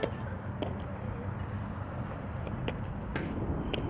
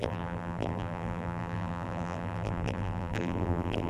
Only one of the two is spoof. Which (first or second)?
second